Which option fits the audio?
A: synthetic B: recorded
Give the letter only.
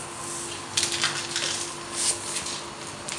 B